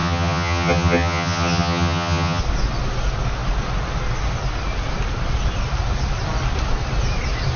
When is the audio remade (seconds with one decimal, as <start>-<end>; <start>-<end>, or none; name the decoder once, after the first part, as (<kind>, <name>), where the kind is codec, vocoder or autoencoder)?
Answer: 0.0-2.4 (vocoder, HiFi-GAN)

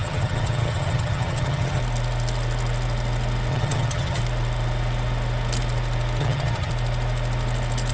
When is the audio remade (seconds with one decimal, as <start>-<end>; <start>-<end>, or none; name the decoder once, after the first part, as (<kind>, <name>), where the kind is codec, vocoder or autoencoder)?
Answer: 0.0-1.8 (vocoder, HiFi-GAN); 3.5-4.2; 6.2-6.7